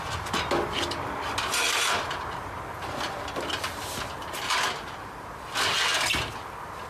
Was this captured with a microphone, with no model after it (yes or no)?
yes